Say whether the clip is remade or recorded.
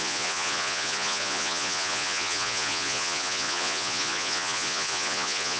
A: remade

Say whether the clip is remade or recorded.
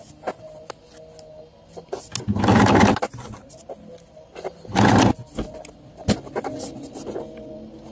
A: recorded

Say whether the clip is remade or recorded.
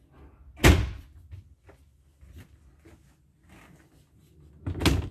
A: recorded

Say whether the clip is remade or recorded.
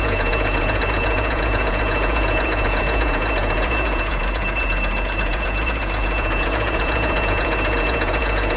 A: remade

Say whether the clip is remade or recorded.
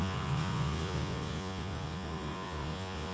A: remade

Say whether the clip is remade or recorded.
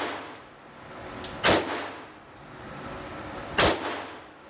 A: recorded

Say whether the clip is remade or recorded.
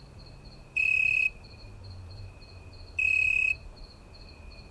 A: remade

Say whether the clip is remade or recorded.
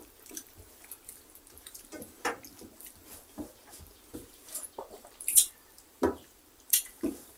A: remade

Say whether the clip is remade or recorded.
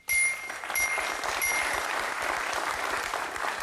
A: recorded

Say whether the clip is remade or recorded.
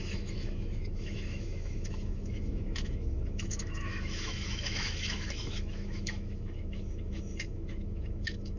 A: remade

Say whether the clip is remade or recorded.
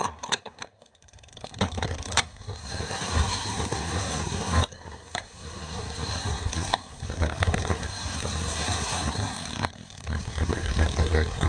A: remade